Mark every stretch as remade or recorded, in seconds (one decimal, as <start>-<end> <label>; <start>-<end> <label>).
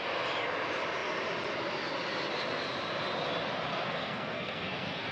0.0-3.7 recorded; 3.7-5.1 remade